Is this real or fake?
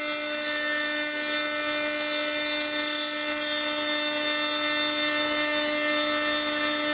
real